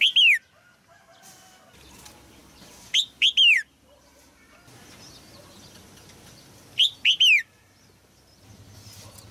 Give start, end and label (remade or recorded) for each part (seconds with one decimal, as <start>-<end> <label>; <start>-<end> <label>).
0.0-9.3 recorded